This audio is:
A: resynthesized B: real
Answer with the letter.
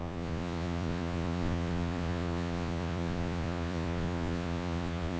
A